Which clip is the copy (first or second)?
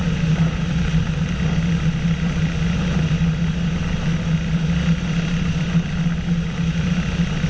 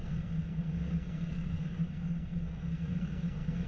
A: second